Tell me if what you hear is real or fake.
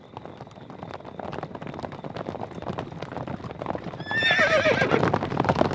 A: real